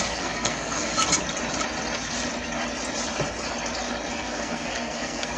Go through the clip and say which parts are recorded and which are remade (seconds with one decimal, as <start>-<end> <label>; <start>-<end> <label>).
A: 0.0-0.9 remade; 0.9-4.1 recorded; 4.1-5.4 remade